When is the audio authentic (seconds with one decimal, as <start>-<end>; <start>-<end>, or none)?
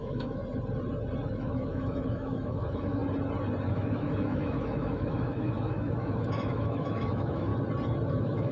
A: 0.4-1.3; 3.0-3.7; 7.5-8.1